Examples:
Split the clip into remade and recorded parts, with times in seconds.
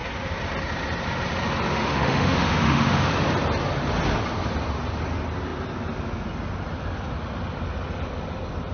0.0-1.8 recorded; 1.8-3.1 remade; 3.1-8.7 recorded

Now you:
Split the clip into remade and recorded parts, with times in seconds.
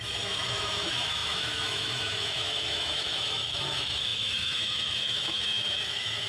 0.0-6.3 remade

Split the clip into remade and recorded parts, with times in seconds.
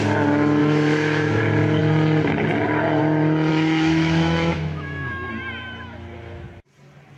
0.0-0.6 recorded; 0.6-1.4 remade; 1.4-3.5 recorded; 3.5-5.3 remade; 5.3-7.2 recorded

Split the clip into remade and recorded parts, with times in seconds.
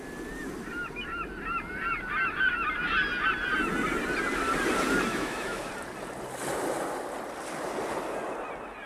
0.0-5.1 recorded; 5.1-5.7 remade; 5.7-8.9 recorded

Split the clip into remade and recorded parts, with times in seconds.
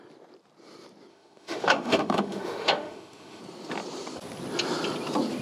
0.0-1.1 recorded; 1.1-3.4 remade; 3.4-5.4 recorded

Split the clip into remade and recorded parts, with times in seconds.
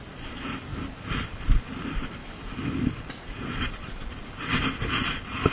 0.0-2.2 recorded; 2.2-2.7 remade; 2.7-5.5 recorded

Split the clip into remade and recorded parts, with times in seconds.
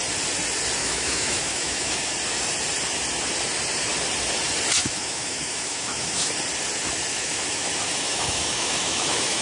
0.0-0.8 recorded; 0.8-2.1 remade; 2.1-4.8 recorded; 4.8-6.3 remade; 6.3-7.1 recorded; 7.1-9.4 remade